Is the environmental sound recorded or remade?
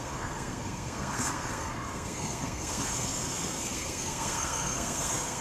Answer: remade